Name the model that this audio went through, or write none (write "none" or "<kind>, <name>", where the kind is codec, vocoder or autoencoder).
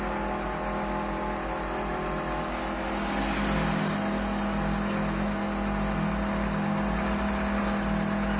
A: none